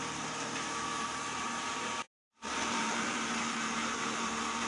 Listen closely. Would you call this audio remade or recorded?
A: remade